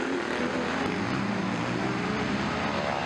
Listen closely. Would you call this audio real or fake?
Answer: real